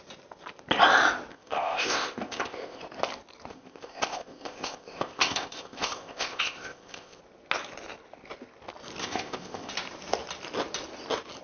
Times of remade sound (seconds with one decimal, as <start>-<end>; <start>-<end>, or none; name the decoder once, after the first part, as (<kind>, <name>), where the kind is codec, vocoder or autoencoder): 1.3-2.8 (codec, ZipCodec); 3.5-7.2; 9.0-9.7